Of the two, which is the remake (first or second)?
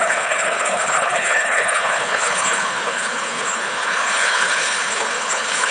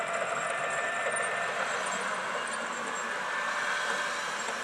first